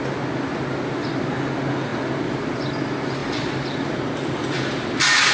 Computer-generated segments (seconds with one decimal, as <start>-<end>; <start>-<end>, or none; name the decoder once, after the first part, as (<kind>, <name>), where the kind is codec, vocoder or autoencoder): 3.2-3.9 (vocoder, BigVGAN v2); 4.4-5.3